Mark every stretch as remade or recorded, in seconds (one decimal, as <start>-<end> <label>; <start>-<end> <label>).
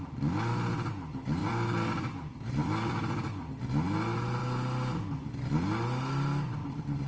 0.0-1.4 recorded; 1.4-3.5 remade; 3.5-7.1 recorded